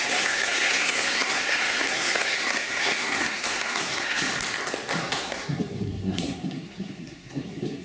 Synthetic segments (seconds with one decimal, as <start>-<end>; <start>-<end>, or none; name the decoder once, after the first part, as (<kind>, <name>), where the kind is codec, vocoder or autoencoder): 0.0-4.3 (codec, SNAC); 5.0-7.8